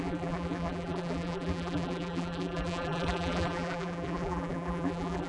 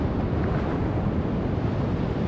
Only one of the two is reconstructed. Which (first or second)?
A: first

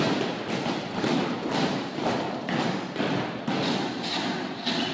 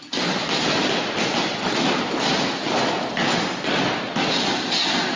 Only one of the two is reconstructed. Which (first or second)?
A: first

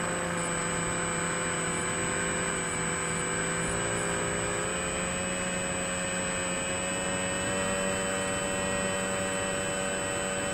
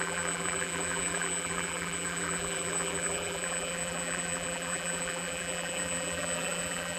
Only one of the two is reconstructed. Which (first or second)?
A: second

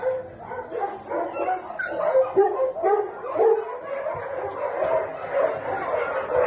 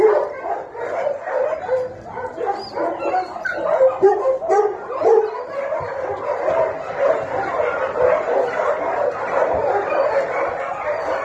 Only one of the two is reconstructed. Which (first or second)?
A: second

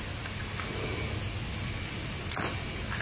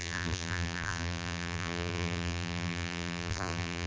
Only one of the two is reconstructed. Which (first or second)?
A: second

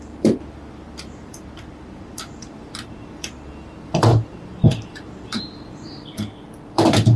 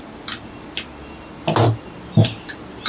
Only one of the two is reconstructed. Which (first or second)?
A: first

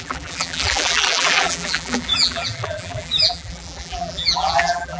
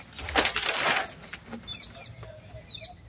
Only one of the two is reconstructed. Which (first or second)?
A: first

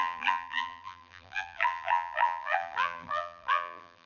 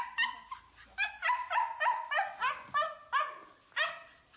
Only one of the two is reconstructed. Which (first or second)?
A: first